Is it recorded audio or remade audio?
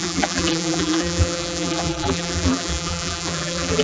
remade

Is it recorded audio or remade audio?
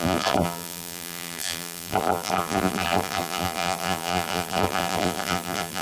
remade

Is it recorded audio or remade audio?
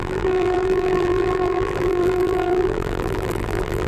remade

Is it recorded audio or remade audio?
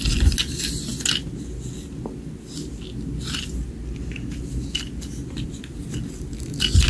recorded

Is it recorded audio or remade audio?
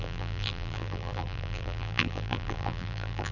remade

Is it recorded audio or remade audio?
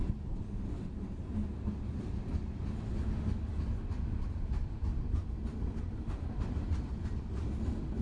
recorded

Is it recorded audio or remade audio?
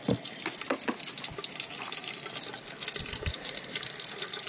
recorded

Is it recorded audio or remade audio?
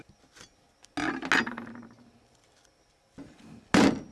recorded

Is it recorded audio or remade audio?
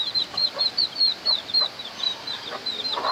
recorded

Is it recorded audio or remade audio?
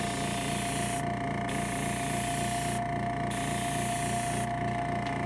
recorded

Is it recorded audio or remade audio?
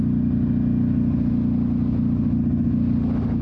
recorded